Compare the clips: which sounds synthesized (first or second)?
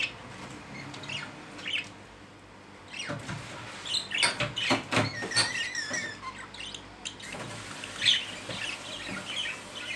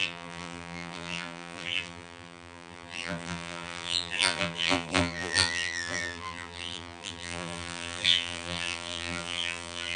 second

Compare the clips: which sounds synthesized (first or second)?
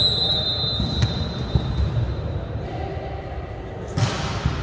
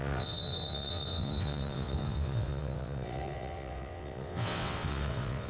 second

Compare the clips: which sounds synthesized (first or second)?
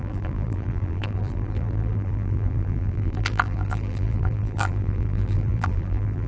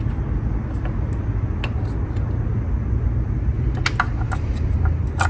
first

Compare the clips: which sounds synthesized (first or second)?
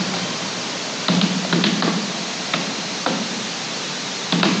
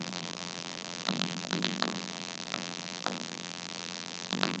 second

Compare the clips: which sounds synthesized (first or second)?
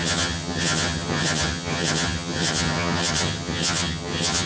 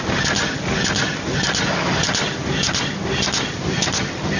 first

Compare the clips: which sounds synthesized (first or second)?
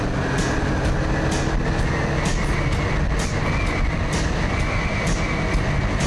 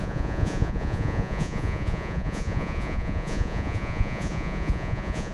second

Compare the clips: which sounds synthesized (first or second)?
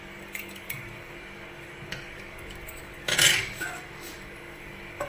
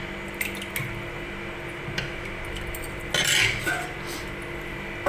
first